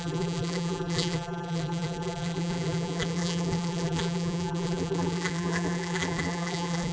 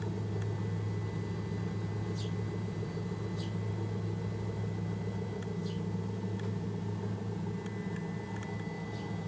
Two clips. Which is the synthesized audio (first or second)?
first